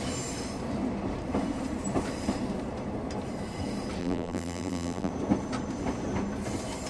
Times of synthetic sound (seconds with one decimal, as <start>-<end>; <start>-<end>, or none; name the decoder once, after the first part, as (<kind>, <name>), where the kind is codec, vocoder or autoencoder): 4.0-5.1 (vocoder, BigVGAN v2)